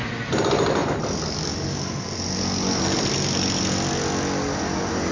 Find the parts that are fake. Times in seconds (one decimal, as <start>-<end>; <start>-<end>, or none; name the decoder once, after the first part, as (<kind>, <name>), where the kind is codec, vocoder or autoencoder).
none